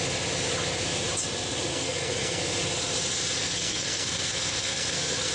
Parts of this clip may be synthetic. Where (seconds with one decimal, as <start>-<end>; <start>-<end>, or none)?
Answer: 1.7-2.6; 3.4-5.3